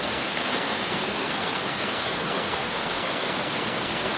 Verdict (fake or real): fake